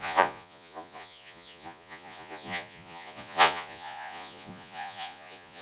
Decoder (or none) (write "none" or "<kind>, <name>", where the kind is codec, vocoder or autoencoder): vocoder, Vocos